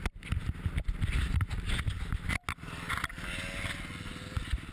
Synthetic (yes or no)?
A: no